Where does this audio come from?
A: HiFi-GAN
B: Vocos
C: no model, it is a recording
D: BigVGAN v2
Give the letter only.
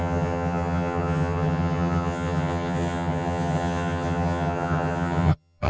A